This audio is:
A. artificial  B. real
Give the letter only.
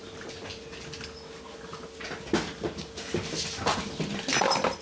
B